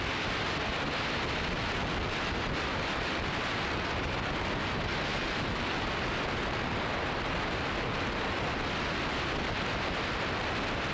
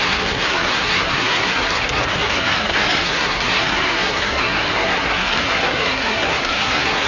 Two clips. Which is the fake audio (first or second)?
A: second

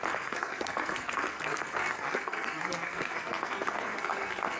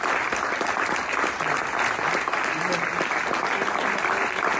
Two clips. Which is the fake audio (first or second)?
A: first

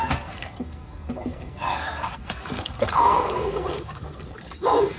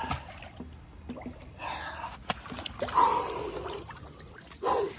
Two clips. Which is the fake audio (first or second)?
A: first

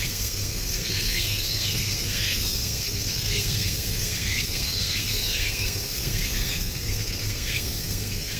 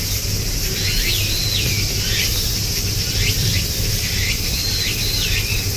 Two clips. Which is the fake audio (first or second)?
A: first